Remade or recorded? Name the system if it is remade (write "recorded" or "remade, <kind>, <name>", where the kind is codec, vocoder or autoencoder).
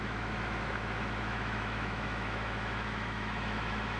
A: remade, autoencoder, DAC-VAE